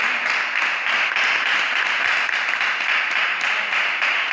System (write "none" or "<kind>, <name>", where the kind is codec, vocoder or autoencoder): none